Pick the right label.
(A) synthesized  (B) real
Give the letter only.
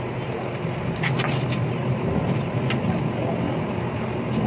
B